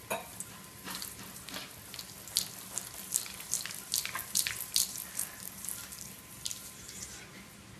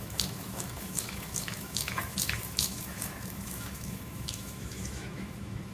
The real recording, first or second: first